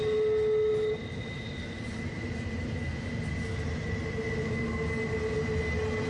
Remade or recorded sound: recorded